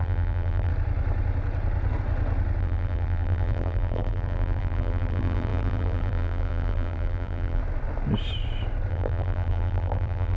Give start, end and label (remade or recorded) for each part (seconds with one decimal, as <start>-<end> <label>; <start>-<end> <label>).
0.0-0.7 remade; 0.7-2.6 recorded; 2.6-7.6 remade; 7.6-8.9 recorded; 8.9-10.4 remade